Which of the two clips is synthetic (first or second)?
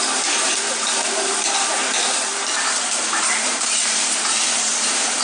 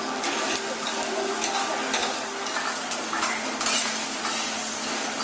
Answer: first